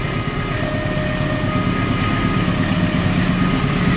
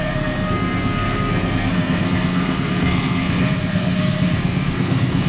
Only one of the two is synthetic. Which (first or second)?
second